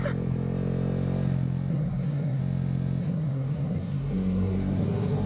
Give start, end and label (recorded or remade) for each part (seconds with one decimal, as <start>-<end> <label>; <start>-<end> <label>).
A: 0.0-1.7 recorded; 1.7-2.4 remade; 2.4-3.0 recorded; 3.0-5.3 remade